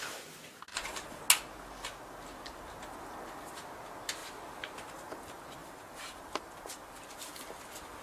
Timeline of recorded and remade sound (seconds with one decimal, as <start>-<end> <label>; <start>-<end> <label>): 0.0-0.7 recorded; 0.7-1.2 remade; 1.2-5.6 recorded; 5.6-6.5 remade; 6.5-8.0 recorded